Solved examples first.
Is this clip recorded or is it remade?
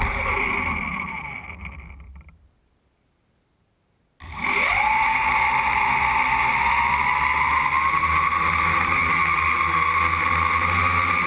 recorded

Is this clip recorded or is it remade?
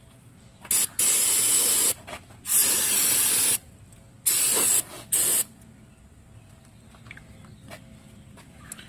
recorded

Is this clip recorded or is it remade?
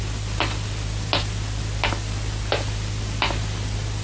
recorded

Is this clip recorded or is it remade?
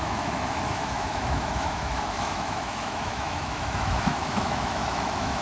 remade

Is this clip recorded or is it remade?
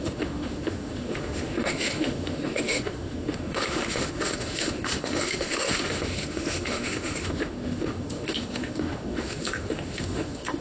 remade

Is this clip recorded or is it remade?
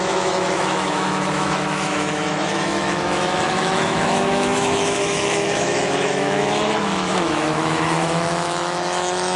remade